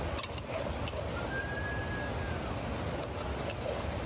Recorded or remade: recorded